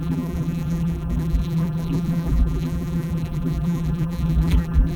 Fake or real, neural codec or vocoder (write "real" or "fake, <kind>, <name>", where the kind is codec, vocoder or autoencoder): fake, vocoder, BigVGAN v2